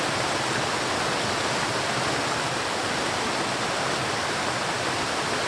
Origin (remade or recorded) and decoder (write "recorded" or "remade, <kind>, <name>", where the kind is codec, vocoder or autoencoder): recorded